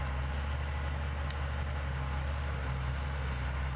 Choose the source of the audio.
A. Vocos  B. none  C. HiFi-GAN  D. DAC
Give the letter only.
B